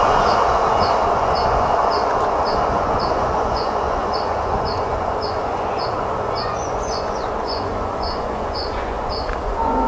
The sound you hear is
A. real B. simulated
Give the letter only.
B